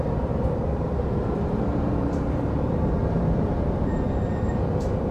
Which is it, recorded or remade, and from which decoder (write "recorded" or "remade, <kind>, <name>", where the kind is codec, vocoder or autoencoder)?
remade, vocoder, BigVGAN v2